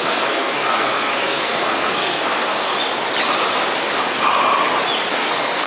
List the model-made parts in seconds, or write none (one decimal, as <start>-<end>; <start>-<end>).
0.0-2.7; 5.1-5.7